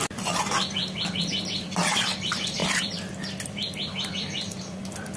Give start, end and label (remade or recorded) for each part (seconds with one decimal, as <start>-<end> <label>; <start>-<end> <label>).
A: 0.0-5.2 recorded